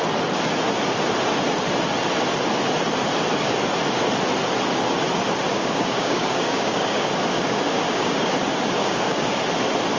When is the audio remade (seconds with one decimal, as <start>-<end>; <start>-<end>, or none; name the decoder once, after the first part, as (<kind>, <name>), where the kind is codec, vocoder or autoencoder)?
5.5-8.3 (codec, DAC); 8.8-9.4